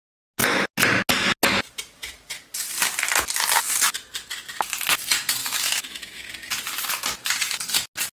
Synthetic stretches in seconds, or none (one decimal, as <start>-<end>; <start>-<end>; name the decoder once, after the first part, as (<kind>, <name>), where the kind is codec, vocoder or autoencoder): 5.4-6.3 (autoencoder, DAC-VAE)